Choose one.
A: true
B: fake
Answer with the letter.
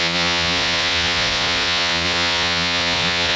B